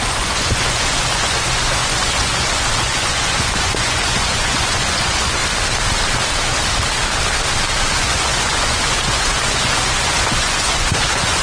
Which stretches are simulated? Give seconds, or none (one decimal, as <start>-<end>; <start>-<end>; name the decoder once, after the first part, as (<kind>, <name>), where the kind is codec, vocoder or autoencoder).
0.0-5.4 (vocoder, Vocos); 7.8-11.4